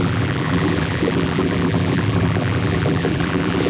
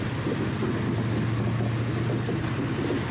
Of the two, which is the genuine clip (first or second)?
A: second